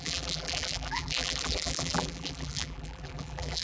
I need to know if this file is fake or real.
fake